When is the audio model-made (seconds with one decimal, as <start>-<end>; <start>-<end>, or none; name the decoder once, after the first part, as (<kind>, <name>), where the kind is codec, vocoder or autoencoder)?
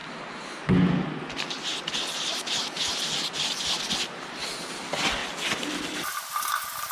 5.2-6.4 (vocoder, BigVGAN v2)